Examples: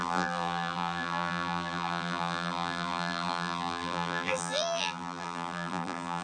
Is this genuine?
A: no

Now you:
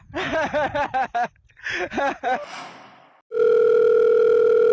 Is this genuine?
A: yes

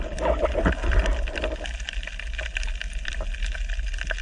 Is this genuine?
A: yes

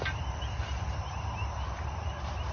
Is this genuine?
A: no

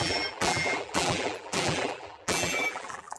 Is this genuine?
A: no